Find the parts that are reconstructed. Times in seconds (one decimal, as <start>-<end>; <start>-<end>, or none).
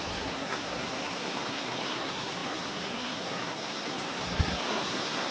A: 0.0-5.3